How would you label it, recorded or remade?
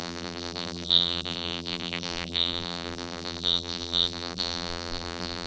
remade